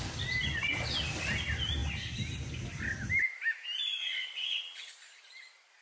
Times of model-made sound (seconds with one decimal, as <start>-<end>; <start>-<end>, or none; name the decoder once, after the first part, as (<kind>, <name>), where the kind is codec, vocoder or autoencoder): 4.0-4.9 (vocoder, WaveNeXt)